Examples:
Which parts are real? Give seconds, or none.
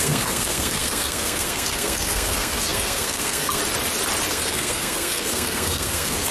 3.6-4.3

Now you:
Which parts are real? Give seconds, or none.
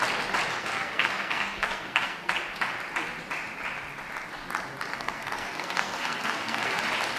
0.0-0.6; 2.3-4.9; 6.8-7.2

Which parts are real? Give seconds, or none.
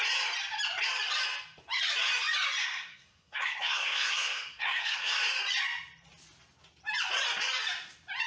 0.0-2.6; 5.1-8.3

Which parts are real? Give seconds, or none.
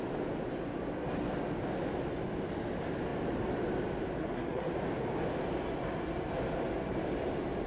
0.0-4.2; 4.7-7.7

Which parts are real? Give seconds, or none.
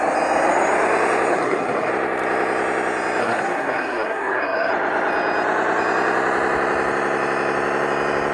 0.0-1.3; 1.9-3.2; 4.7-8.3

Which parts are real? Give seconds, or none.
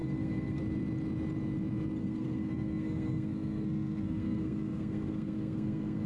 0.6-2.0